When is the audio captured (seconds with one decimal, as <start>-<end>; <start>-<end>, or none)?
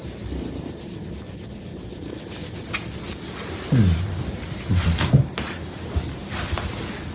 0.0-7.1